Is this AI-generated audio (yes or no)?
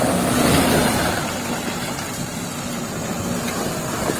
no